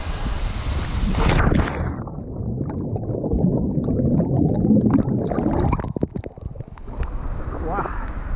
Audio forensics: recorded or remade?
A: recorded